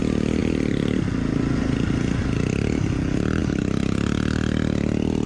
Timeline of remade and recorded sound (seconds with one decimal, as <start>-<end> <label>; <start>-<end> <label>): 0.0-5.3 recorded